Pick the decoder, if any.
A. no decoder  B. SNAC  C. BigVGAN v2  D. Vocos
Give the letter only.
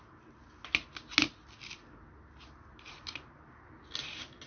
A